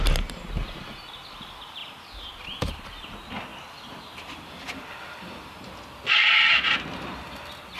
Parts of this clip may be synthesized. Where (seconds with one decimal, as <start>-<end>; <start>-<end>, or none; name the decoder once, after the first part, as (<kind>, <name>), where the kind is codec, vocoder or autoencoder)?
none